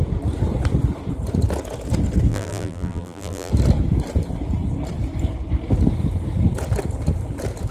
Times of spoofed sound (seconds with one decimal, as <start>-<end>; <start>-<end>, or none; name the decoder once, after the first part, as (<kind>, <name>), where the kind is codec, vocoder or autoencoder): 2.3-3.5 (vocoder, BigVGAN v2)